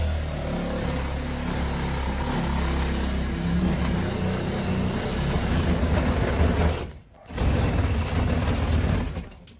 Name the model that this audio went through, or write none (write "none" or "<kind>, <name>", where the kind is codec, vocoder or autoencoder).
none